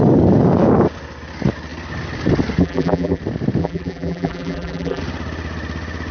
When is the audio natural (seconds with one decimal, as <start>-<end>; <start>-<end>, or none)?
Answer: 0.0-2.6; 3.2-3.6; 5.0-6.1